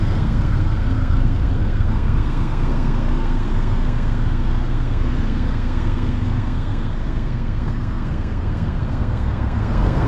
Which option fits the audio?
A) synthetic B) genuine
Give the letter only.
A